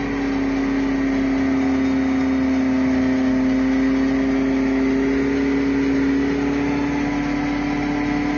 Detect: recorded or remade recorded